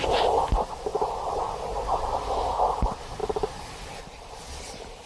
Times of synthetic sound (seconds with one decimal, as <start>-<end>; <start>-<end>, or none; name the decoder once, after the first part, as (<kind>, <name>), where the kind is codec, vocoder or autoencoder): none